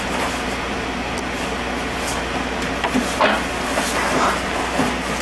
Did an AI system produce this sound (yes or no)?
no